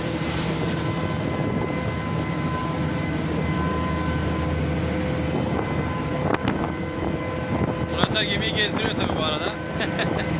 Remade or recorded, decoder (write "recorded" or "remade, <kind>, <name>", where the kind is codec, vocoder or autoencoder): recorded